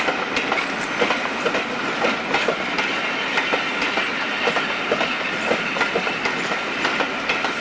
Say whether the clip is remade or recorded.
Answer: recorded